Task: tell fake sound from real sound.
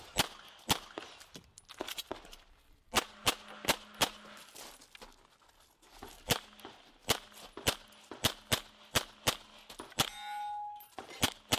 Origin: real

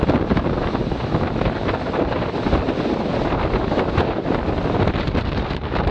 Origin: real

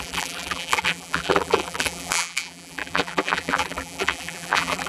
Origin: fake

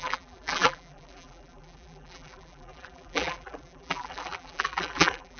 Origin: fake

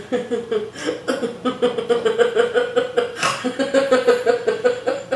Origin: fake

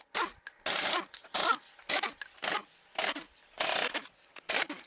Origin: real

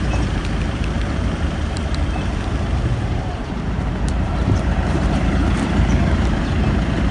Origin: fake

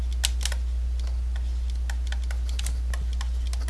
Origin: real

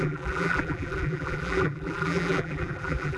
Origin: fake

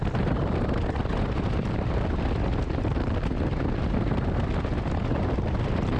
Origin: real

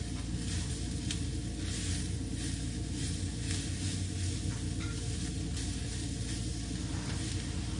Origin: real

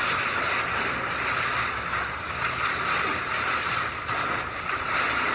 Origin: real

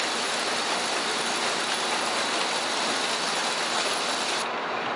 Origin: real